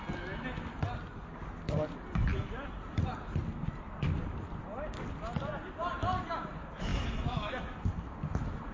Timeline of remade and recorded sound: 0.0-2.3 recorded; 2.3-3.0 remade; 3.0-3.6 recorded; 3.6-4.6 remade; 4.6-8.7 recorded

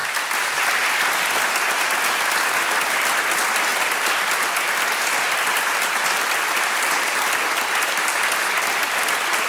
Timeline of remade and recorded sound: 0.0-3.7 recorded; 3.7-8.2 remade; 8.2-9.5 recorded

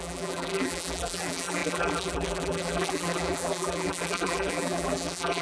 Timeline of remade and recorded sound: 0.0-5.4 remade

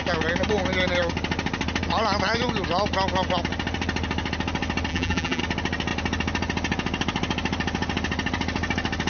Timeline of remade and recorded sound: 0.0-4.9 recorded; 4.9-5.4 remade; 5.4-9.1 recorded

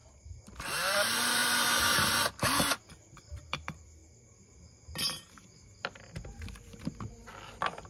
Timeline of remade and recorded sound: 0.0-0.6 recorded; 0.6-1.4 remade; 1.4-2.8 recorded; 2.8-4.0 remade; 4.0-5.3 recorded; 5.3-7.9 remade

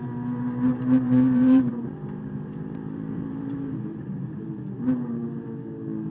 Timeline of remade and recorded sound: 0.0-0.7 recorded; 0.7-4.4 remade; 4.4-6.1 recorded